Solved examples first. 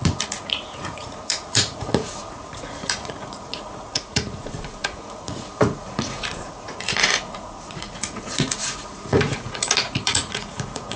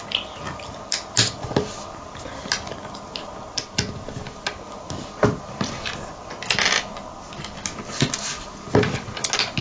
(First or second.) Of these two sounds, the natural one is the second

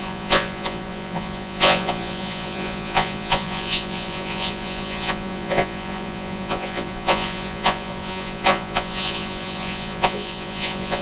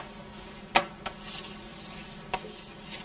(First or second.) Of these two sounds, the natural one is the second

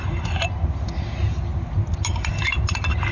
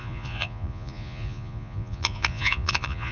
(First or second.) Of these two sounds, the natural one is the first